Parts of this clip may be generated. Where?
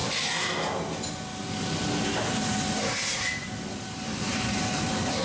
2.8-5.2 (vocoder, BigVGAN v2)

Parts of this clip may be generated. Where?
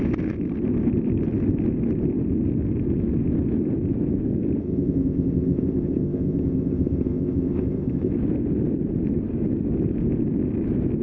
4.6-8.1 (codec, ZipCodec)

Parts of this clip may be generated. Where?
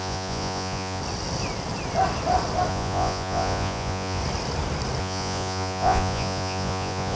0.0-1.0 (vocoder, Vocos); 2.7-4.2; 5.0-7.2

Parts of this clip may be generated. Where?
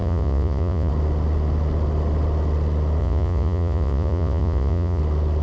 0.0-0.9 (vocoder, Vocos); 3.0-5.0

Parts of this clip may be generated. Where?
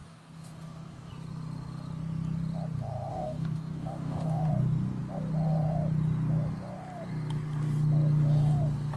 0.0-1.1 (codec, DAC); 3.1-4.5